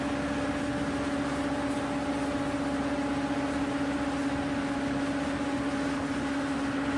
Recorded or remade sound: recorded